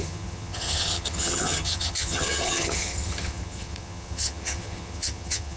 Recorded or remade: remade